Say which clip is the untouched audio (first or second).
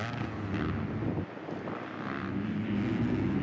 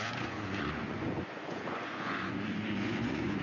first